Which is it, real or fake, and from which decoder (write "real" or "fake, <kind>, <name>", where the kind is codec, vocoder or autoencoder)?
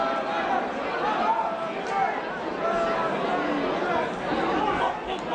real